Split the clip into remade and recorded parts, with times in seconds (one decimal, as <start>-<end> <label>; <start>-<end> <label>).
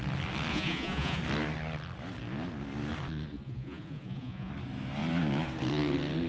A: 0.0-0.5 recorded; 0.5-1.2 remade; 1.2-3.3 recorded; 3.3-4.5 remade; 4.5-6.3 recorded